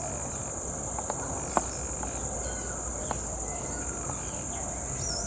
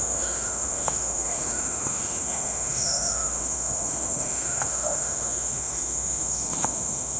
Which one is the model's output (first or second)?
second